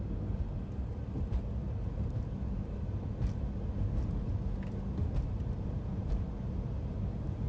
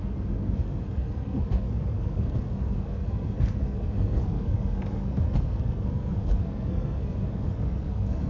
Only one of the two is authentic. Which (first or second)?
first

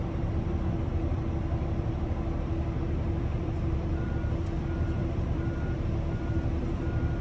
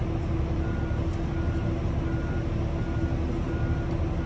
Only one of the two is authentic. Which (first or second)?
second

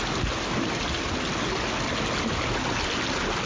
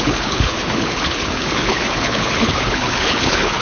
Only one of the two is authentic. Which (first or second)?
first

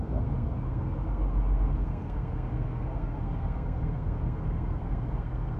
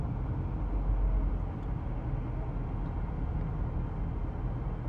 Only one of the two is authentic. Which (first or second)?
second